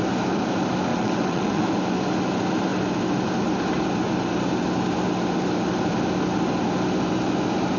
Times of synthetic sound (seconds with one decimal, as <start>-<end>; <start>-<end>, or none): 0.9-1.6